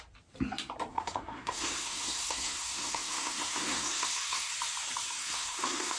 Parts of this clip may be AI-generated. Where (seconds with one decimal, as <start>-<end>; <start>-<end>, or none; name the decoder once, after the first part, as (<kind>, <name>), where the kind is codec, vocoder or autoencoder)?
0.9-4.5 (codec, SNAC); 5.2-6.0